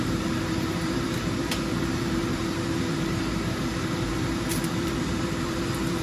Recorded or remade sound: remade